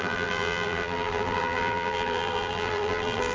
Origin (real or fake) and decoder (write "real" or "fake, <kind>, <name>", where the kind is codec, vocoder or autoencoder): fake, vocoder, BigVGAN v2